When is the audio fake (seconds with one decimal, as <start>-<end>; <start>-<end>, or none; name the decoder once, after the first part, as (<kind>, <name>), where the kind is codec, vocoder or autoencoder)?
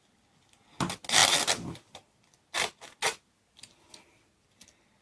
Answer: none